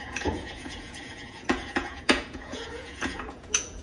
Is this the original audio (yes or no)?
no